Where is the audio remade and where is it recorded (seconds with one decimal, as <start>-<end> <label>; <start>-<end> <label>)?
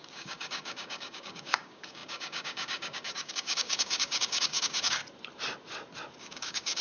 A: 0.0-5.0 remade; 5.0-6.2 recorded; 6.2-6.8 remade